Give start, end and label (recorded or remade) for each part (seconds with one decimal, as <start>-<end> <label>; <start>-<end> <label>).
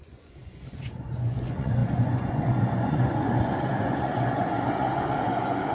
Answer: 0.0-5.7 remade